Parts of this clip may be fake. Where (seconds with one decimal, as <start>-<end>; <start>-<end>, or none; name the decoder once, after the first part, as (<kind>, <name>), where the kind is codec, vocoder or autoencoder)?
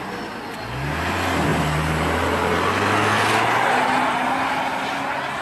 none